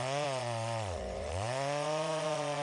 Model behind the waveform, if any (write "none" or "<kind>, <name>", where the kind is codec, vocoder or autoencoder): vocoder, Vocos